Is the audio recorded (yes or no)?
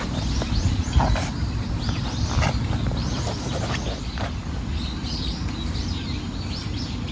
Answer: yes